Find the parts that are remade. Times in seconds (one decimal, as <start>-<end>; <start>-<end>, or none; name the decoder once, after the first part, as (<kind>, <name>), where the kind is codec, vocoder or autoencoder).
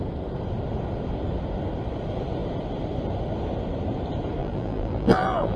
4.4-5.6 (vocoder, BigVGAN v2)